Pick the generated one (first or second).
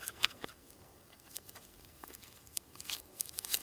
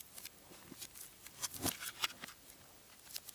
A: first